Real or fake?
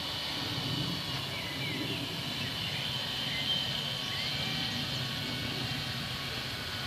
real